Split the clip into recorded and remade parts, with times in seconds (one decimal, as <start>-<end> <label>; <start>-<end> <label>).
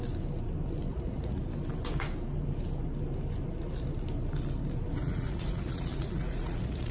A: 0.0-0.9 recorded; 0.9-1.4 remade; 1.4-5.0 recorded; 5.0-6.9 remade